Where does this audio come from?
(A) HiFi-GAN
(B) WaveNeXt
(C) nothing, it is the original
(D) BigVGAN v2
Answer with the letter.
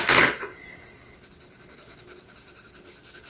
C